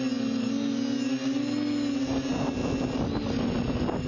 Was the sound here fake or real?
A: real